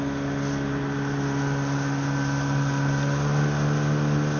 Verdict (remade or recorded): recorded